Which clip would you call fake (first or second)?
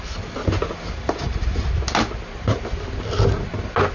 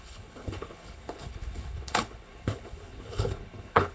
second